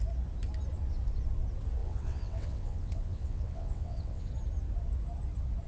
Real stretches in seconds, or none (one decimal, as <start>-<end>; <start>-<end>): 0.0-1.8; 4.3-5.7